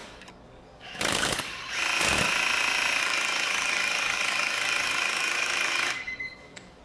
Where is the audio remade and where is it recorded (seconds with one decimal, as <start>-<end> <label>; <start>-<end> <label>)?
0.0-1.6 remade; 1.6-3.0 recorded; 3.0-6.8 remade